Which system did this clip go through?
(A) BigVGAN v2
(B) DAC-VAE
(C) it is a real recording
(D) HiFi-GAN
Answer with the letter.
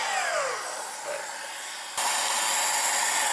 C